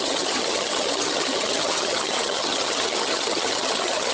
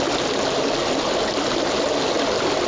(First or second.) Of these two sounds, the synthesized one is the first